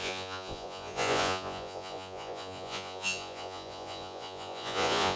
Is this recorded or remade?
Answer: remade